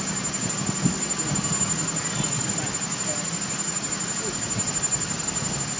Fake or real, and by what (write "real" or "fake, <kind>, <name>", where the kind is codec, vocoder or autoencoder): real